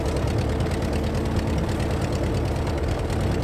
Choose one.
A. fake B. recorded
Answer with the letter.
B